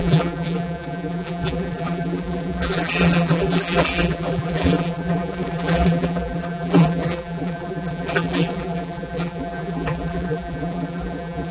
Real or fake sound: fake